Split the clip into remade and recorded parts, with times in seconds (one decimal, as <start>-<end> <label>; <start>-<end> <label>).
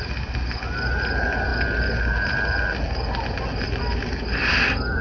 0.0-5.0 recorded